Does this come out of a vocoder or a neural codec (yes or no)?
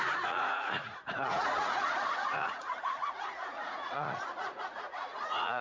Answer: yes